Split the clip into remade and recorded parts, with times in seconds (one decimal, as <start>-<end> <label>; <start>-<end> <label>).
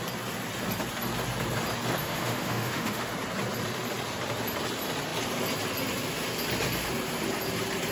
0.0-2.0 recorded; 2.0-3.1 remade; 3.1-7.9 recorded